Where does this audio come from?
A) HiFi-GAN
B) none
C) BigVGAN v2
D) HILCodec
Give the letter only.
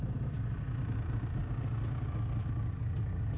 B